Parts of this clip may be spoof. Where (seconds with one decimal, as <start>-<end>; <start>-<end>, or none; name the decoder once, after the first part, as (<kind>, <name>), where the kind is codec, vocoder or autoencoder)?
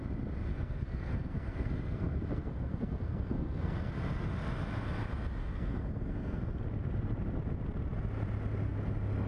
0.5-3.9 (codec, SNAC); 5.4-6.4